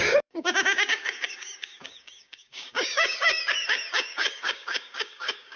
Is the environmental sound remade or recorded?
remade